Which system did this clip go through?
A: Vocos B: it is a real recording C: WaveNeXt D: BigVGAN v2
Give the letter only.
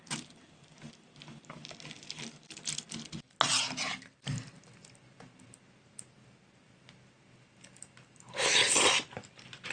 B